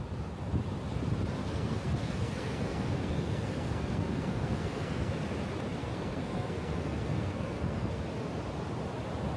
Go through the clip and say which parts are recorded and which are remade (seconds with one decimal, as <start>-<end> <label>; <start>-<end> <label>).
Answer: 0.0-1.4 recorded; 1.4-5.2 remade; 5.2-5.8 recorded; 5.8-8.0 remade; 8.0-9.4 recorded